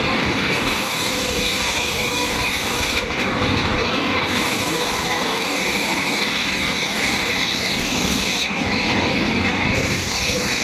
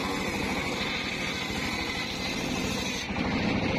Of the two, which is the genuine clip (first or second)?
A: second